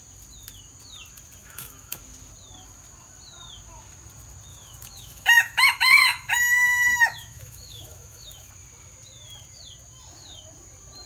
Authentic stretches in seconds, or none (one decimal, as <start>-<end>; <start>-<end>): 0.0-1.4; 2.0-4.5; 8.5-11.1